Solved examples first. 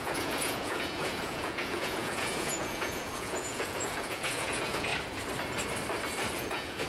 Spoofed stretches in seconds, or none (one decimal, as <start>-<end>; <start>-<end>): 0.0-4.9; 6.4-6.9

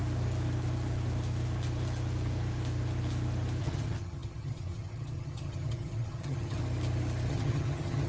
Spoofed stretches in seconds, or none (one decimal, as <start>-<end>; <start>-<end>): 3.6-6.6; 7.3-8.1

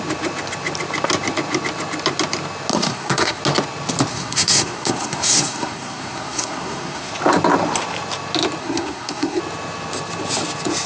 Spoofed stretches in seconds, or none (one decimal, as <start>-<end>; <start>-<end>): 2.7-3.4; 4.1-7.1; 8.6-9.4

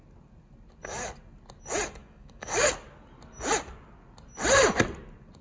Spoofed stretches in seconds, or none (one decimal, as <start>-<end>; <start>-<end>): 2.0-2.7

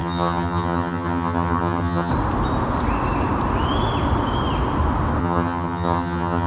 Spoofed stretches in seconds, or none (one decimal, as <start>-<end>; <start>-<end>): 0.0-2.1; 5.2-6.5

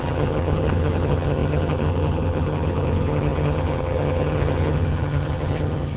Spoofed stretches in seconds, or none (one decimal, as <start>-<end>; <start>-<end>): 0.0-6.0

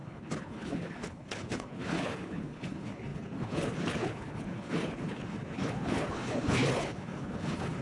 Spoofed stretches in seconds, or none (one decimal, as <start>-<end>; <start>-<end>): 0.0-7.8